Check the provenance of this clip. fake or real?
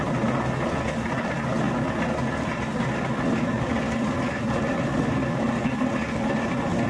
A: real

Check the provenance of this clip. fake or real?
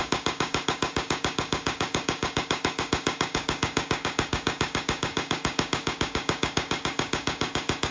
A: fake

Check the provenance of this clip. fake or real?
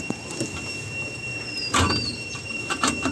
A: real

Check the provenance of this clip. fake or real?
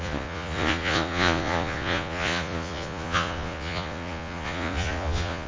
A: fake